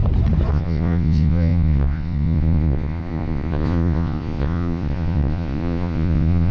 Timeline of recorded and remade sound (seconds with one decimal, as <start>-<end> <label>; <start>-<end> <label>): 0.0-0.5 recorded; 0.5-6.5 remade